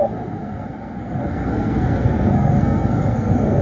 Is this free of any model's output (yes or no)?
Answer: no